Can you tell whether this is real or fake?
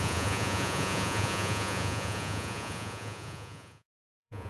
fake